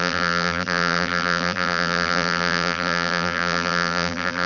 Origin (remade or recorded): remade